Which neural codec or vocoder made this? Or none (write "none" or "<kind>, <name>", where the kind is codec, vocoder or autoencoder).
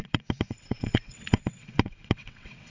vocoder, WaveNeXt